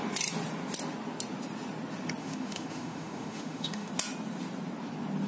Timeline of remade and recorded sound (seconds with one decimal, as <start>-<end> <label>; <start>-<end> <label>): 0.0-2.2 recorded; 2.2-3.9 remade; 3.9-5.3 recorded